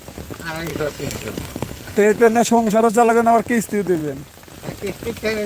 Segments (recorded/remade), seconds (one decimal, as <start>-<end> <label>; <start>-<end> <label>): 0.0-0.7 recorded; 0.7-3.1 remade; 3.1-5.5 recorded